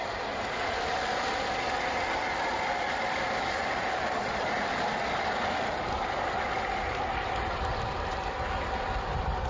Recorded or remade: recorded